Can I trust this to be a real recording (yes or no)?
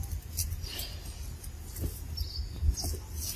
yes